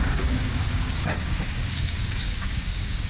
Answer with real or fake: fake